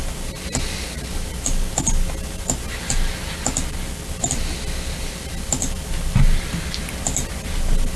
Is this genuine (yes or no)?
yes